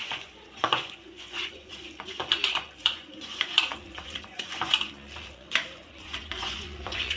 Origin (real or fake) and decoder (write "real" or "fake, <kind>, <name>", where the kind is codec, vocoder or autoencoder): fake, vocoder, Vocos